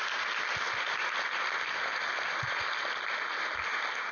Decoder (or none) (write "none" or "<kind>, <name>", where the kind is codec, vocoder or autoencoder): none